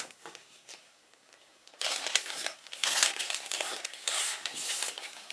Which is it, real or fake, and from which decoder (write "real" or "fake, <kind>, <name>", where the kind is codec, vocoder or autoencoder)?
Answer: fake, codec, SNAC